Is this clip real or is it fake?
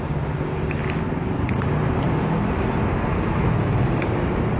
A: real